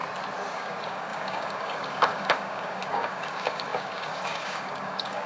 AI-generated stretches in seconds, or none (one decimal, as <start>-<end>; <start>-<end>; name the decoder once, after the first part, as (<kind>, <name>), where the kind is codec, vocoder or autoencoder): 0.5-5.3 (codec, DAC)

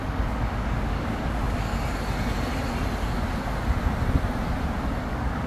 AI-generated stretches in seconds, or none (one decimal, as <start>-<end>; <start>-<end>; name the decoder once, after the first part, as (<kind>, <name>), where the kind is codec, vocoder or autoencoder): 0.0-1.7 (codec, DAC); 5.0-5.5

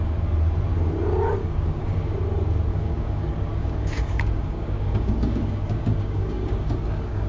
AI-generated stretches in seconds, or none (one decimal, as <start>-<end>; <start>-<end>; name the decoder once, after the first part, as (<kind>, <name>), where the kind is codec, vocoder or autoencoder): 1.4-2.0 (codec, DAC); 2.7-7.3

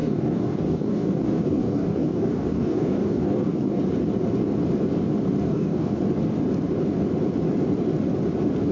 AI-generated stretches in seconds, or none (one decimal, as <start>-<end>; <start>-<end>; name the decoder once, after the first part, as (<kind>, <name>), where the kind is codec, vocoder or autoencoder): 0.0-3.8 (codec, DAC); 5.4-6.0

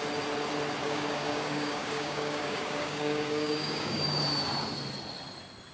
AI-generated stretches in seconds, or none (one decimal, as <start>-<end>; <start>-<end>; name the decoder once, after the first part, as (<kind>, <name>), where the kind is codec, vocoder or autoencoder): 0.8-4.2 (codec, DAC)

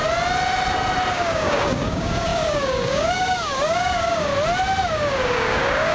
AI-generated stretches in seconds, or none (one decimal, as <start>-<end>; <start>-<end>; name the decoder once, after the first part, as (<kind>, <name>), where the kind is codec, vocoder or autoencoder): 1.1-4.3 (codec, DAC); 4.8-5.9

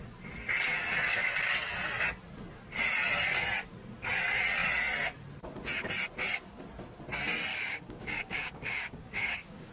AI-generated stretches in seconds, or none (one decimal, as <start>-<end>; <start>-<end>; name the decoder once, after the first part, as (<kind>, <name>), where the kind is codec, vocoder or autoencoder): 7.5-9.7 (codec, DAC)